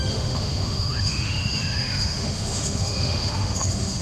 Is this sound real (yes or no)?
no